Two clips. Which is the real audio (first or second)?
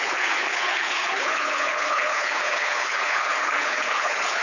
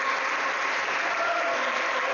second